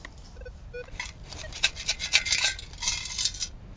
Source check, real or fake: real